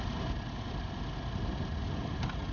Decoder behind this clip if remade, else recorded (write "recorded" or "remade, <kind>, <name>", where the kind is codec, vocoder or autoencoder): recorded